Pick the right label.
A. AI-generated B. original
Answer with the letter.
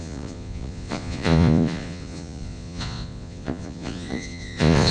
A